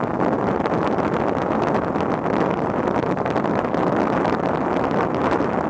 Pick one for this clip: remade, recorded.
recorded